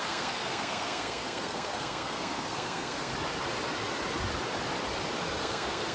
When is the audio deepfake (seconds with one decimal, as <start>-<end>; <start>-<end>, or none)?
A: 0.0-3.1; 5.4-5.9